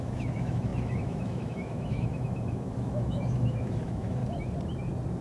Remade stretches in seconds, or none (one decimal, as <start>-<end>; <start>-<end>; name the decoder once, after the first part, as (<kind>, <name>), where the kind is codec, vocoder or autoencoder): 0.0-4.2 (autoencoder, DAC-VAE)